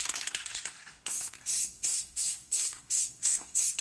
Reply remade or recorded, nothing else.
remade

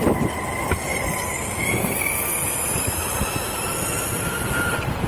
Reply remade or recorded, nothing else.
recorded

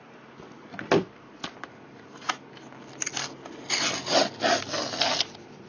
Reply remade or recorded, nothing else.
recorded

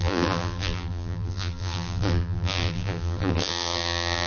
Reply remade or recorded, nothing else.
remade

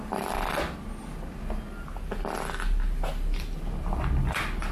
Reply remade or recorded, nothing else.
recorded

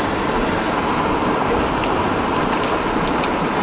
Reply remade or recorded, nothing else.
recorded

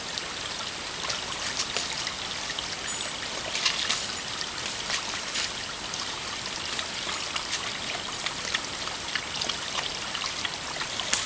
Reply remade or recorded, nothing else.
recorded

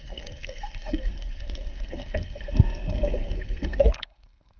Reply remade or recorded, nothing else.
remade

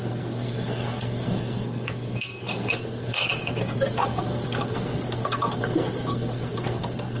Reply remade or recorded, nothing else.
remade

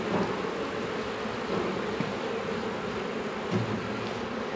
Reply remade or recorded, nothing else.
recorded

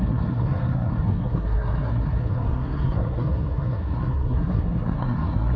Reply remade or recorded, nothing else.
remade